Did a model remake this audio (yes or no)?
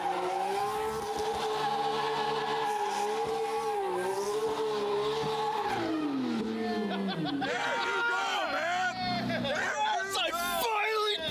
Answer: no